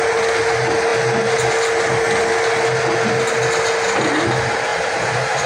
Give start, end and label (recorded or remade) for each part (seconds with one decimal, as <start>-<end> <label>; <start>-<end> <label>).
0.0-4.7 recorded; 4.7-5.5 remade